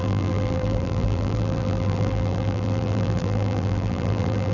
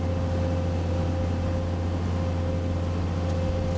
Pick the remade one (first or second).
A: first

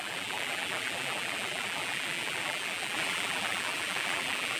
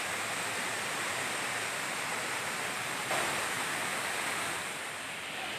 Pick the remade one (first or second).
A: first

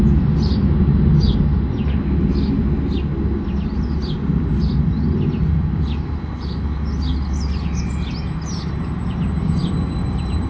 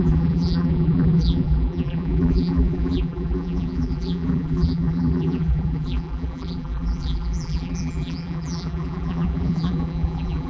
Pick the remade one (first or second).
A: second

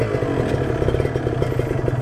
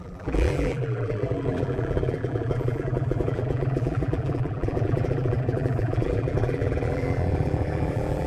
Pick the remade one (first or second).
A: second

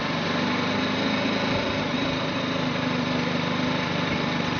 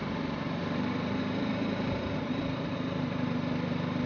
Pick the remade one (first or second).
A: second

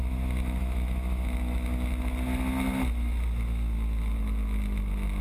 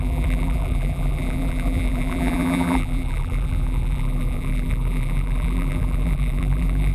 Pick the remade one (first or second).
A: second